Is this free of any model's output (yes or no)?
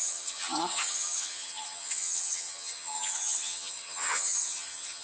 no